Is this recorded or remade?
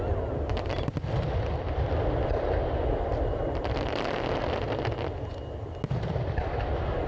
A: recorded